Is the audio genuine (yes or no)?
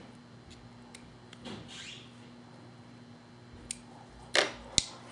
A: yes